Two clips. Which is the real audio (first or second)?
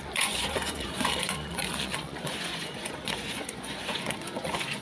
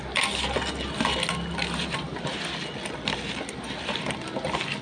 second